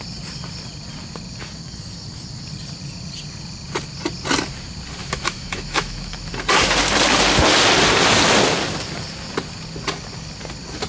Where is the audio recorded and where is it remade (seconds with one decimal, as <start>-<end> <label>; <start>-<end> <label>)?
0.0-5.0 recorded; 5.0-6.3 remade; 6.3-10.9 recorded